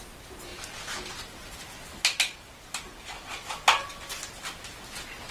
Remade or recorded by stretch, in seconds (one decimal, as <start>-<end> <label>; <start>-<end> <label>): 0.0-5.3 recorded